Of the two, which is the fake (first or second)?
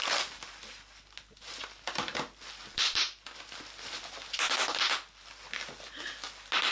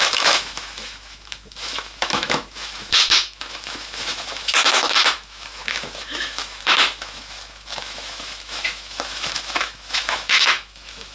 second